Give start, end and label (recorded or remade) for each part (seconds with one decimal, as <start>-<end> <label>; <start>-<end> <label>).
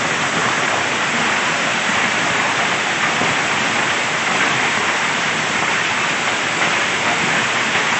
0.0-6.8 recorded; 6.8-7.4 remade; 7.4-8.0 recorded